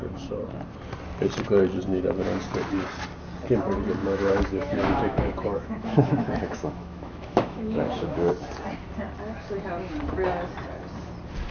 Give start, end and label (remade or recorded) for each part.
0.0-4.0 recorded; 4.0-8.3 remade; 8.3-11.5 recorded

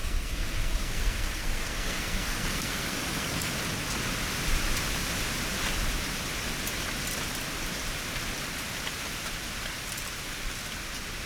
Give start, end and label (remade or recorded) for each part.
0.0-3.5 remade; 3.5-11.3 recorded